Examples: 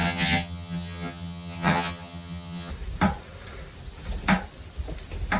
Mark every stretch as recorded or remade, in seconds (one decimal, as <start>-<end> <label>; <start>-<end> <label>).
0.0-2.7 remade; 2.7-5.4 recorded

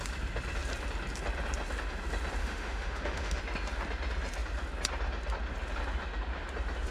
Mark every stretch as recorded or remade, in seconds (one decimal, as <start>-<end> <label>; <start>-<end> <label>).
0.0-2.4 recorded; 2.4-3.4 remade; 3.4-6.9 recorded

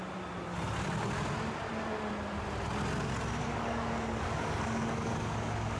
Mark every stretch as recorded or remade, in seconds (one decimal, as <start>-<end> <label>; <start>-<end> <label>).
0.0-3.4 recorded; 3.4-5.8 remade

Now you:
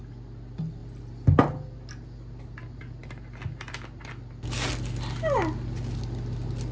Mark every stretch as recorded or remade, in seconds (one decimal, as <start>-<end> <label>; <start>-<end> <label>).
0.0-6.7 recorded

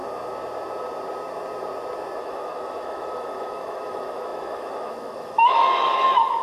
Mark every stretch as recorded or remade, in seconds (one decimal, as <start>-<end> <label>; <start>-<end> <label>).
0.0-2.2 recorded; 2.2-6.4 remade

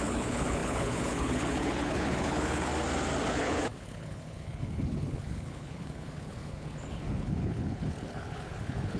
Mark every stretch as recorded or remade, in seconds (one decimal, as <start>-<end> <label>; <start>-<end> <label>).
0.0-2.7 remade; 2.7-3.3 recorded; 3.3-9.0 remade

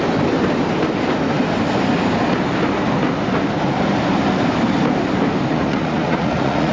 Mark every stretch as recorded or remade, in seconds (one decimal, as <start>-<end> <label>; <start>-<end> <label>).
0.0-5.5 recorded; 5.5-6.7 remade

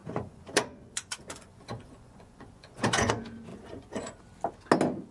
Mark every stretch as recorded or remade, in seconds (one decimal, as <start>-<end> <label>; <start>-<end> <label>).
0.0-3.1 remade; 3.1-3.5 recorded; 3.5-4.2 remade; 4.2-5.1 recorded